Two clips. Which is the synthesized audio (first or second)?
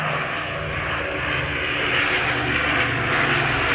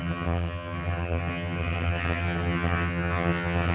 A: second